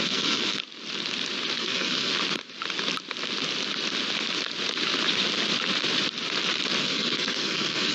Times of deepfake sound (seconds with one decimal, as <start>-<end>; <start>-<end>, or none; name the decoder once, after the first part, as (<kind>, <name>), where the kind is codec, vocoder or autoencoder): 0.0-0.6 (codec, SNAC); 1.6-2.1; 6.8-7.9